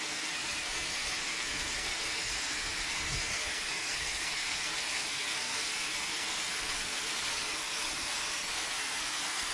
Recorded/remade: remade